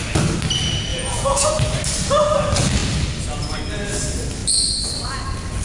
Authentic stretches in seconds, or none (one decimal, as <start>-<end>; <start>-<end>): 0.0-0.9; 1.5-5.6

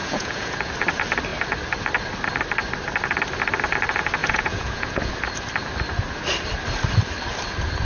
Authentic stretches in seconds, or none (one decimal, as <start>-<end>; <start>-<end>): 0.7-4.2; 5.1-7.8

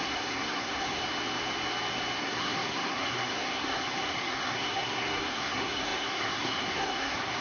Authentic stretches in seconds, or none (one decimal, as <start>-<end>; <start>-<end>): 1.0-2.2